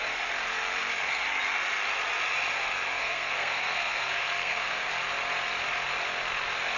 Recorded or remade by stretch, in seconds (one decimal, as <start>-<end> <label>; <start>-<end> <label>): 0.0-3.0 recorded; 3.0-4.9 remade; 4.9-6.8 recorded

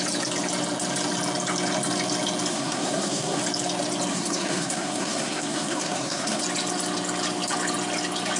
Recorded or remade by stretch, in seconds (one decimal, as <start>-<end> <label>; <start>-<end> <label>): 0.0-2.5 recorded; 2.5-3.4 remade; 3.4-4.1 recorded; 4.1-6.4 remade; 6.4-8.4 recorded

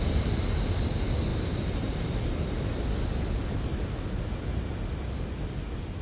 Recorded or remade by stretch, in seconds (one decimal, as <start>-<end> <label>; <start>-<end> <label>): 0.0-6.0 recorded

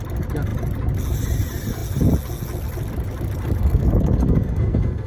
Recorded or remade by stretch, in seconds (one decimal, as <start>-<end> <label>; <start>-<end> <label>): 0.0-3.6 recorded; 3.6-5.1 remade

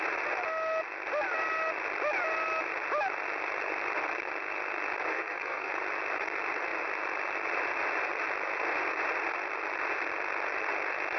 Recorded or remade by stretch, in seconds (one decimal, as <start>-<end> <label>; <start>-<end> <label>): 0.0-5.1 recorded; 5.1-5.7 remade; 5.7-11.2 recorded

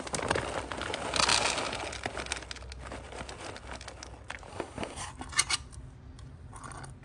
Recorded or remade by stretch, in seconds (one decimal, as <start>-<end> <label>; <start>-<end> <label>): 0.0-4.5 recorded; 4.5-5.1 remade; 5.1-7.0 recorded